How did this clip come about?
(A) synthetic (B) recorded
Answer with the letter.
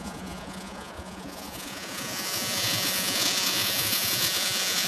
A